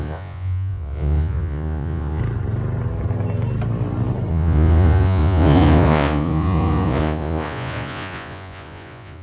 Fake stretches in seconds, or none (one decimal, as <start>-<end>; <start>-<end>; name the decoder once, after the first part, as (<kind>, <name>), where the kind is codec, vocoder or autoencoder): 0.0-2.2 (vocoder, Vocos); 4.3-9.2